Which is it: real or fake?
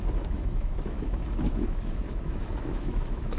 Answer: fake